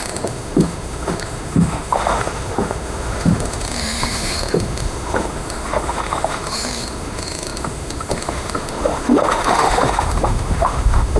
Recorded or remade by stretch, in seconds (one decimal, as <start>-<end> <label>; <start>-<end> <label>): 0.0-11.2 remade